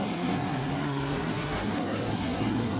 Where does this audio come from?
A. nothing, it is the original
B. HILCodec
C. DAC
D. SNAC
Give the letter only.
D